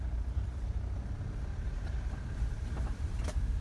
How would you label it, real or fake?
fake